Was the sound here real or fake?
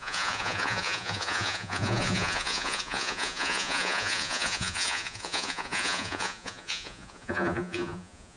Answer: fake